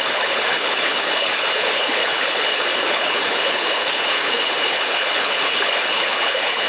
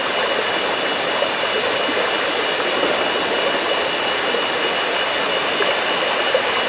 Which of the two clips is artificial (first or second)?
first